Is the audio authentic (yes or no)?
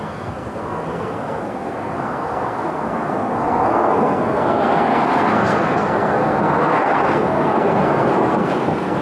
no